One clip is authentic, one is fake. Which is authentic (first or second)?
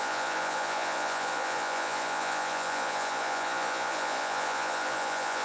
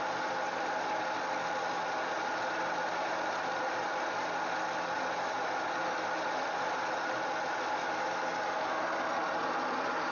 second